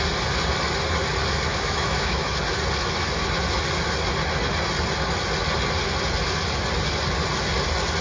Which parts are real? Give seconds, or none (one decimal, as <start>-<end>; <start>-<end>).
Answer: 0.0-1.5; 2.3-8.0